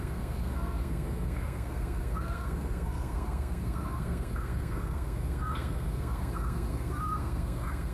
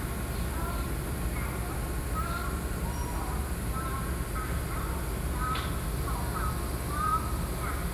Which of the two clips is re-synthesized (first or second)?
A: first